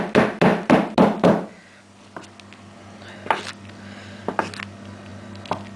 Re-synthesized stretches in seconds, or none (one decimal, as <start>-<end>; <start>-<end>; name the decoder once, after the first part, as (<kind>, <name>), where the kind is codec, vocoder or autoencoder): none